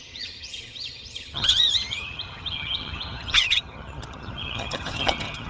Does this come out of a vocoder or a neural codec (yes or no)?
yes